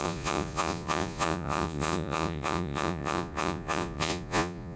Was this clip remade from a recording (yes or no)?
yes